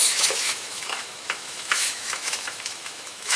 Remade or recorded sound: remade